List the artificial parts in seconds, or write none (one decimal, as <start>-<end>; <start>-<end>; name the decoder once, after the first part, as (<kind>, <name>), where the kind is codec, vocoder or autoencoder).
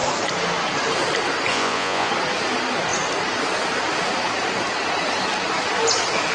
1.5-2.1 (vocoder, Vocos)